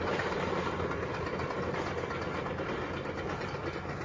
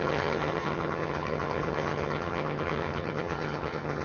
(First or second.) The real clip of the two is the first